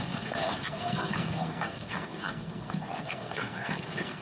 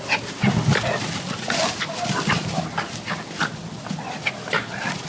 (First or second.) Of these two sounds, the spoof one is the first